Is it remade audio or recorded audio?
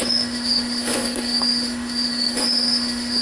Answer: remade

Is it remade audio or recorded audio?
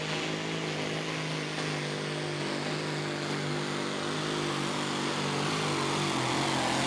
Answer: recorded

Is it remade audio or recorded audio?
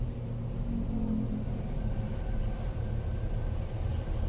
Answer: recorded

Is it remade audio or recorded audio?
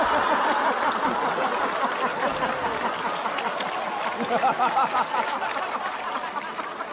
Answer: recorded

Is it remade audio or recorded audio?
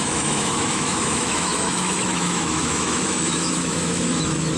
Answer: remade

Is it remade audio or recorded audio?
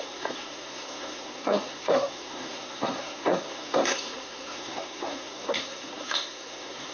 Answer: remade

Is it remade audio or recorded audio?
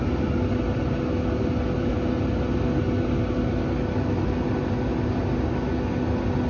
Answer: recorded